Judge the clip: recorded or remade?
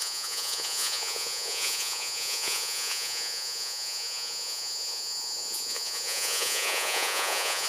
remade